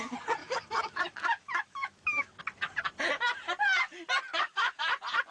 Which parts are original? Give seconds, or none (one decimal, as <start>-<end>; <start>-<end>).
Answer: 0.0-0.4; 2.4-4.3; 4.8-5.3